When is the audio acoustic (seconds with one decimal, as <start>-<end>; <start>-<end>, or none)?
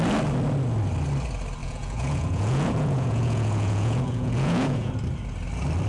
0.0-1.6; 4.9-5.9